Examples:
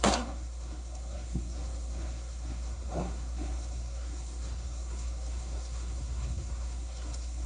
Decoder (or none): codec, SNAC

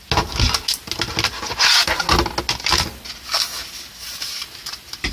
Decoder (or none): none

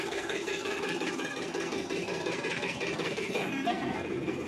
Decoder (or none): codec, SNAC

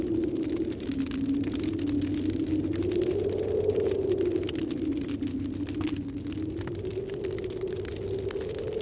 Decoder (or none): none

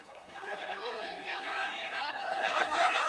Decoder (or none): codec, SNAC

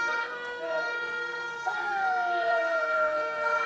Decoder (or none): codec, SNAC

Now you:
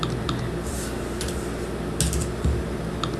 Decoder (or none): none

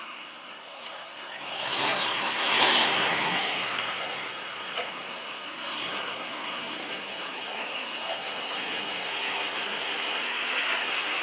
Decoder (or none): codec, SNAC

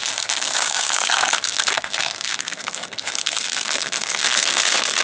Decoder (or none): codec, SNAC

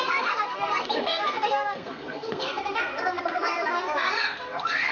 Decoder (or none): codec, SNAC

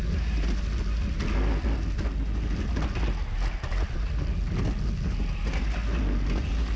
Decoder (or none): none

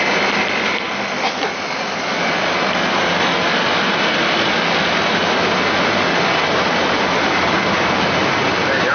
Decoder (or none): none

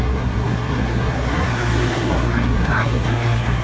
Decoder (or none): codec, SNAC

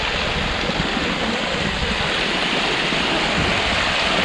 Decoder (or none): none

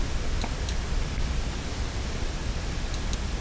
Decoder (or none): none